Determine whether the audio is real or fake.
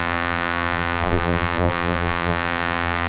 fake